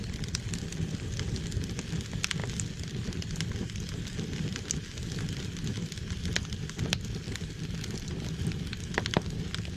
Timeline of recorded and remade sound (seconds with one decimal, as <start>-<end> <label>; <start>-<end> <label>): 0.0-9.8 recorded